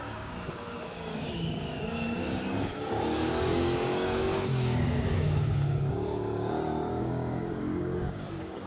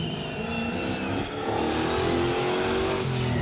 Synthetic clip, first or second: first